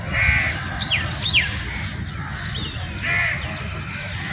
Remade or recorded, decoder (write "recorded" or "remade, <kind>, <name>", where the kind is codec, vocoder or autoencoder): recorded